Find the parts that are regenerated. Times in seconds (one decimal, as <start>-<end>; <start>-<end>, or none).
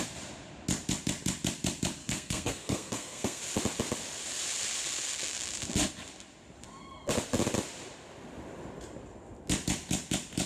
2.0-3.4